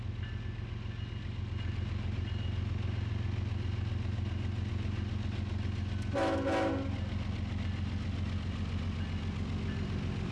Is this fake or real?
real